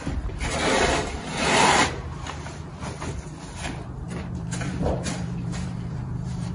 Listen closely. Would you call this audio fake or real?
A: fake